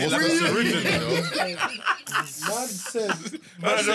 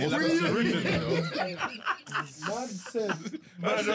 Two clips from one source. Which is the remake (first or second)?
second